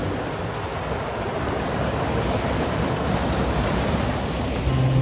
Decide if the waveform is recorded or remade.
recorded